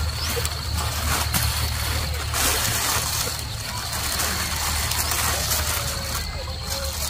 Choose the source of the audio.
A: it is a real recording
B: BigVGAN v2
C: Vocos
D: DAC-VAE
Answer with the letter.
A